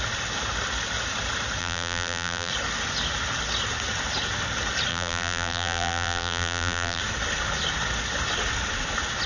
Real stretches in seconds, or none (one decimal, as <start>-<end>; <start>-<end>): 0.0-1.6; 2.5-4.9; 7.0-9.3